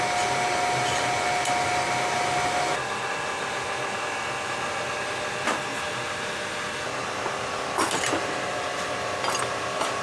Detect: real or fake real